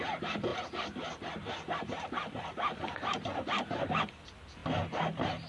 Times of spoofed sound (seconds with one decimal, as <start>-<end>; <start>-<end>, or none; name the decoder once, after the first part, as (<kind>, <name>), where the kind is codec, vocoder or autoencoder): 0.5-3.8 (vocoder, BigVGAN v2)

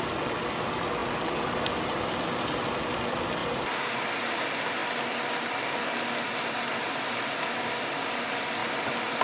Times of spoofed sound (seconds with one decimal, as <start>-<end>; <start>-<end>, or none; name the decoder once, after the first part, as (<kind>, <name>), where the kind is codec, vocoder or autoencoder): 3.4-3.9 (vocoder, BigVGAN v2)

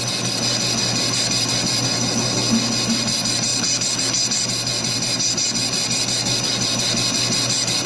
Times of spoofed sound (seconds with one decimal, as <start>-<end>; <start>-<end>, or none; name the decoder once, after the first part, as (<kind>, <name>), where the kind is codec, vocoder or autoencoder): 3.5-4.0 (vocoder, BigVGAN v2)

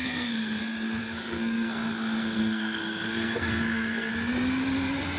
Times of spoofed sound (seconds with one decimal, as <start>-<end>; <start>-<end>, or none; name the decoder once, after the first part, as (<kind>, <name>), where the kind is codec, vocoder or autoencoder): 0.0-0.6 (codec, SNAC); 1.0-4.1

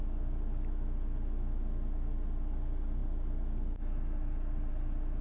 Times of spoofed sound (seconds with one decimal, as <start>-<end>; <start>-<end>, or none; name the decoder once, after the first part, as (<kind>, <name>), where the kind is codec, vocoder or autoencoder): none